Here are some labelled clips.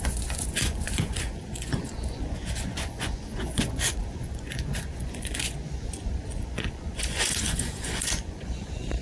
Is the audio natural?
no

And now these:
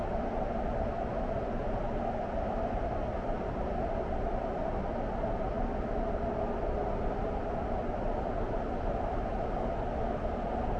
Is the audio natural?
yes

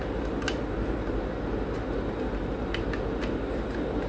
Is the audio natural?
yes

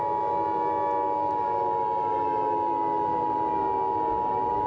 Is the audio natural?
yes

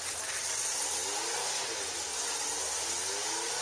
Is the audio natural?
yes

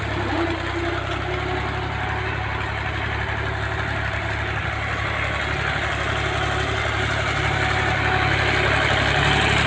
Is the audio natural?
yes